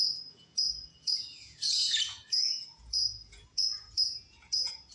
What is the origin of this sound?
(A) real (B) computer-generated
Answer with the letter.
B